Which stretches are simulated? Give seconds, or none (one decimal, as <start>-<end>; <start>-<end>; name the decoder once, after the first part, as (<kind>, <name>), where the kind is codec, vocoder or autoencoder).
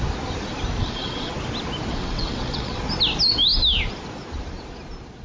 0.8-1.3 (vocoder, WaveNeXt); 1.9-2.8